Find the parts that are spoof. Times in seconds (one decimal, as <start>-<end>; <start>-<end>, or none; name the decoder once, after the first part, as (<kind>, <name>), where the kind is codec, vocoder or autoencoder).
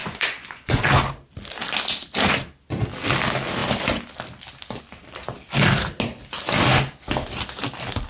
0.0-0.8 (vocoder, Vocos)